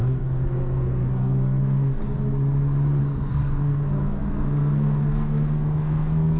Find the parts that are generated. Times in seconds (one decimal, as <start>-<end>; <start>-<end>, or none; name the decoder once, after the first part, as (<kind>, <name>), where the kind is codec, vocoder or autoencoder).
0.0-2.0 (codec, SNAC); 3.0-6.4